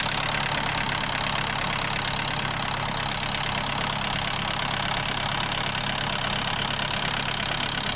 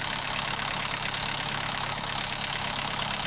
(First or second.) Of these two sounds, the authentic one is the first